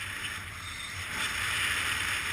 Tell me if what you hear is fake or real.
real